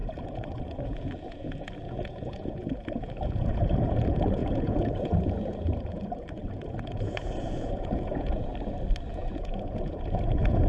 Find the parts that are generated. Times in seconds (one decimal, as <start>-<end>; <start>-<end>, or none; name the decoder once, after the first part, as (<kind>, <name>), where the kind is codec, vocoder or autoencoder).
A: 0.0-8.5 (vocoder, Vocos); 9.1-10.7